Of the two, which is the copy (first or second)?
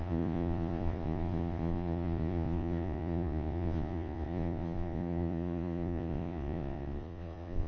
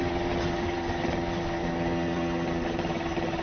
first